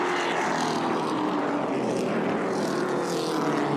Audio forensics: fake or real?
real